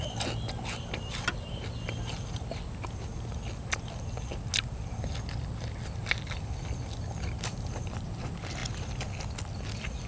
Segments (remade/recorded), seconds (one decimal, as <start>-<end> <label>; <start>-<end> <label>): 0.0-10.1 recorded